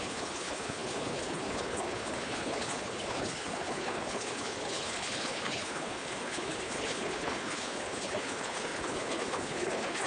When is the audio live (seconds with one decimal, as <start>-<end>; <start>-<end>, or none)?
none